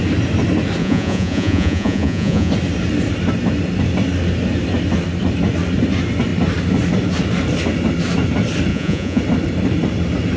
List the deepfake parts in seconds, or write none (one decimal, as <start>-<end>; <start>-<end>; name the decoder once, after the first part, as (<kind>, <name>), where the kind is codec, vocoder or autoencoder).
0.8-2.5 (vocoder, Vocos); 8.7-9.2